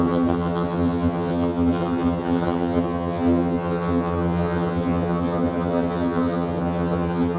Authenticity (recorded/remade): remade